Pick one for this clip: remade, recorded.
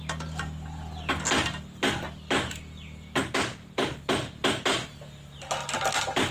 recorded